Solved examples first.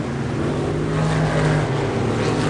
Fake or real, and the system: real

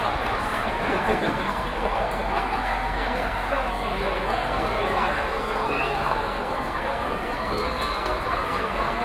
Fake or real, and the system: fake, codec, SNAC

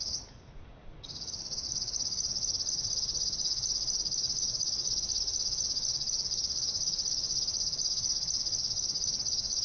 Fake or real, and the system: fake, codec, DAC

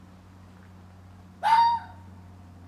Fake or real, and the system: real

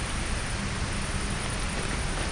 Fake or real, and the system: real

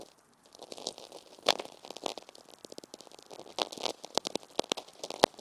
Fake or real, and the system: real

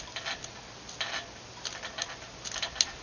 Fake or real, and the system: real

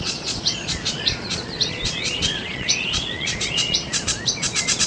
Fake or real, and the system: fake, vocoder, Vocos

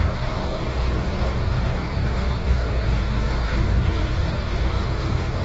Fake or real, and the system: fake, codec, DAC